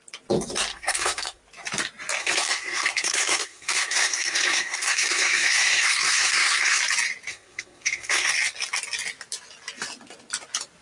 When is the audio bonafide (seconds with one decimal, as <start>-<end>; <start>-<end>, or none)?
0.0-0.7; 1.4-2.2; 6.8-7.3; 8.3-10.8